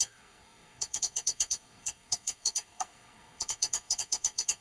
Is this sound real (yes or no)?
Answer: no